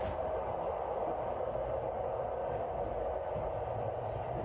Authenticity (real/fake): real